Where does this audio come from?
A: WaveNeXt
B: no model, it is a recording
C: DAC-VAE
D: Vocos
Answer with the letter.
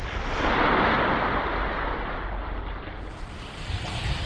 B